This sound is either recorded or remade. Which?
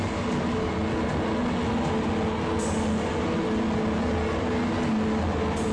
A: recorded